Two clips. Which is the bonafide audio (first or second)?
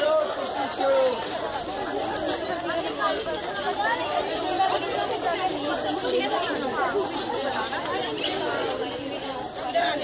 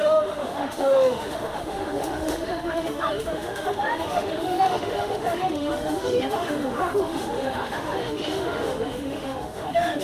first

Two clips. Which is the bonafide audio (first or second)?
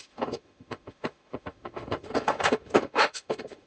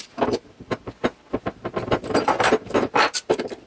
second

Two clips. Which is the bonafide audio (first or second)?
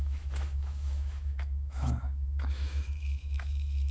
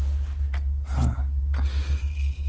second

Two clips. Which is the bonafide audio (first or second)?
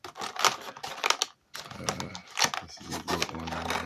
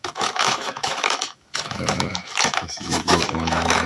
first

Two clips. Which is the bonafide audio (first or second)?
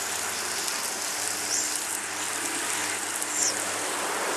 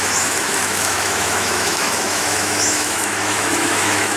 first